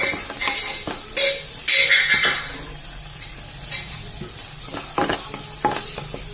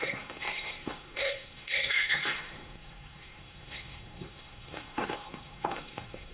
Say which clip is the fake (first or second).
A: second